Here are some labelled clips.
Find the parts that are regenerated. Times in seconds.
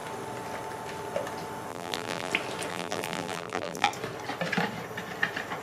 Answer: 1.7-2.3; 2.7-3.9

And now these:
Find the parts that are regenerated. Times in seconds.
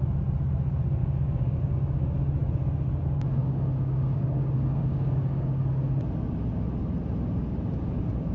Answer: 1.0-1.6; 3.4-5.6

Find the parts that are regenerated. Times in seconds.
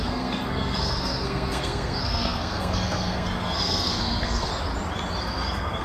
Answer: 0.0-4.5; 5.2-5.8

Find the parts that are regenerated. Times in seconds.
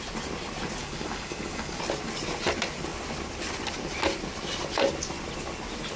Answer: 0.8-1.8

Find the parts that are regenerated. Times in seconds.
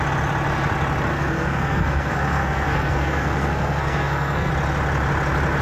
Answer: 1.1-4.5